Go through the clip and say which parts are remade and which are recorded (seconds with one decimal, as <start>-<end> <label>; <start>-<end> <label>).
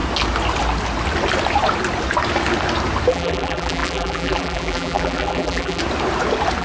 0.0-3.1 recorded; 3.1-5.8 remade; 5.8-6.6 recorded